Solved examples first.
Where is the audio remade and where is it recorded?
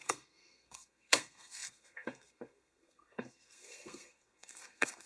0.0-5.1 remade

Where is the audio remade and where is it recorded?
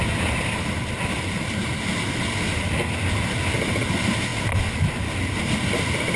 0.0-6.2 recorded